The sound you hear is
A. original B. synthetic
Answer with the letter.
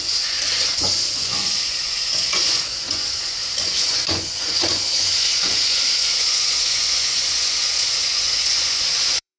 B